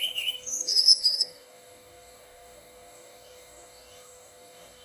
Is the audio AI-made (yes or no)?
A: yes